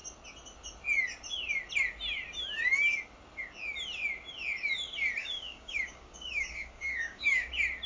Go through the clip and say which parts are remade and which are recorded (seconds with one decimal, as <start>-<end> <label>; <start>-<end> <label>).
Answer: 0.0-5.2 recorded; 5.2-7.5 remade; 7.5-7.9 recorded